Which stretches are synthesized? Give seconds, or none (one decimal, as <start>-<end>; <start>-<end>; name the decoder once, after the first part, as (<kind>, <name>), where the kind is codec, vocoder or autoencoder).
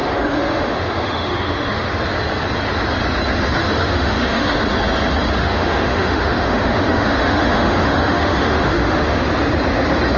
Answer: 0.0-1.9 (autoencoder, DAC-VAE); 3.6-4.6; 5.4-9.2